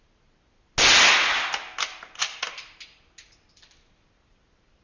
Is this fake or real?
real